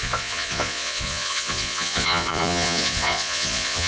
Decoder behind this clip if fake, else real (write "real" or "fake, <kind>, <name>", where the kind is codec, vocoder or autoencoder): fake, vocoder, Vocos